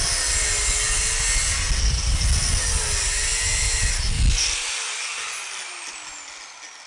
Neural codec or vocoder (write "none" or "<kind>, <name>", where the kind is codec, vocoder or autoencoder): none